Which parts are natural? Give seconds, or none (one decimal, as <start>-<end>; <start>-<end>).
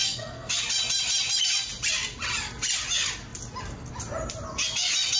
0.5-5.2